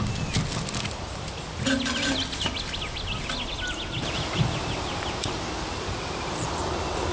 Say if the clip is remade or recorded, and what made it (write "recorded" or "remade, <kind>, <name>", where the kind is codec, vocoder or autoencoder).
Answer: recorded